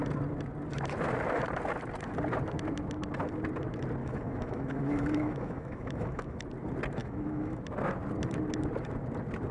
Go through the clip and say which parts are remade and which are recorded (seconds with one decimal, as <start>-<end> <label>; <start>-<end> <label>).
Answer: 0.0-4.0 recorded; 4.0-6.4 remade; 6.4-7.0 recorded; 7.0-7.6 remade; 7.6-9.5 recorded